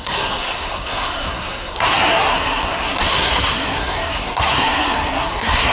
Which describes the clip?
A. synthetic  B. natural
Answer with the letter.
A